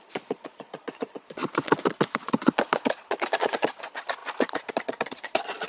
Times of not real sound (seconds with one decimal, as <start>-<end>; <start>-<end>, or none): 0.0-5.7